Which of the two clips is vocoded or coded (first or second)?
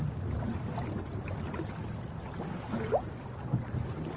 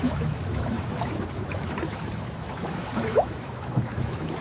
second